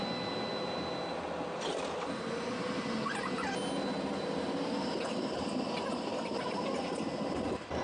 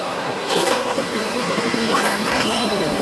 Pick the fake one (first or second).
second